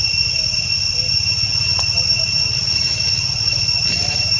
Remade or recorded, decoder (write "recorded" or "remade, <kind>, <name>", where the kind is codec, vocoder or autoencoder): recorded